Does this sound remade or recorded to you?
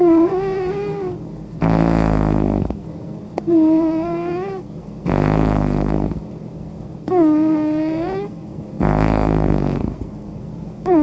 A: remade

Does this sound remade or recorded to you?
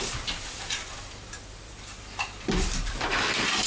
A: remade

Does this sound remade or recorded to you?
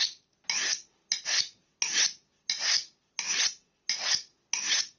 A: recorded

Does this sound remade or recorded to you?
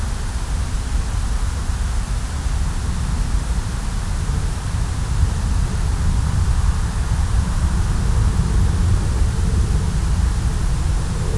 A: recorded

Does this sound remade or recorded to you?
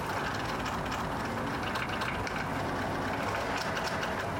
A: recorded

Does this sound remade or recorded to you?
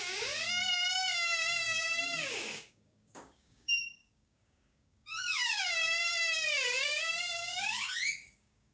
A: remade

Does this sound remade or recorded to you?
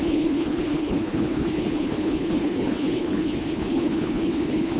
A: remade